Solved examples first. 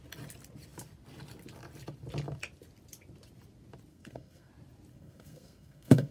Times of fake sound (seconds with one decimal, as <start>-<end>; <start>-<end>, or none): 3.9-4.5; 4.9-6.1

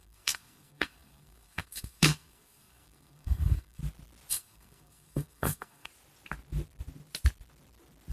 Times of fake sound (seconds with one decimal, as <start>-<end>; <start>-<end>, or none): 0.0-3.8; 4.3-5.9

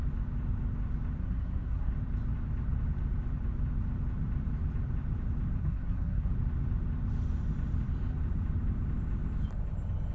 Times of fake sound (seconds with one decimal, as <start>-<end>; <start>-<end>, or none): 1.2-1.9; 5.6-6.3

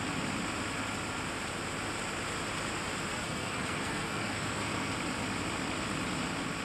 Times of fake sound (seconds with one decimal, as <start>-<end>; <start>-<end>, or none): 3.1-4.9

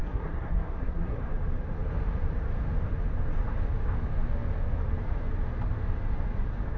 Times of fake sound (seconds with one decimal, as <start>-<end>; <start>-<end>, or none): 0.0-1.2

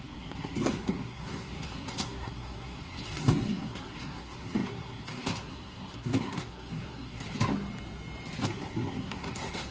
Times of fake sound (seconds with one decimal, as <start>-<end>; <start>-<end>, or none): 0.0-7.2; 8.4-9.7

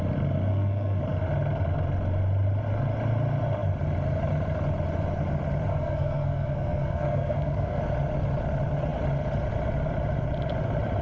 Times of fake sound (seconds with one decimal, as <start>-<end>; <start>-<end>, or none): 0.5-1.0; 5.7-7.8

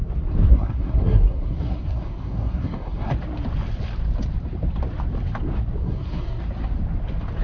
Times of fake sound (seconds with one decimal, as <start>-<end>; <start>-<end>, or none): 0.5-3.1; 5.8-6.4